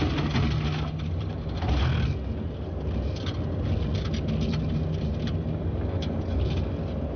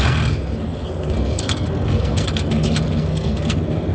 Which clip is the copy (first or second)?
second